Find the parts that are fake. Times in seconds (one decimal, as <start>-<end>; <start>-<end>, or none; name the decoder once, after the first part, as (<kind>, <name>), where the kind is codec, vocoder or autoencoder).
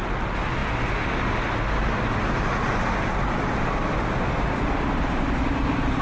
none